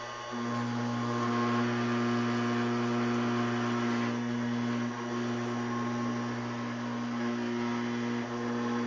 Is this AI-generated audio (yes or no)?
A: no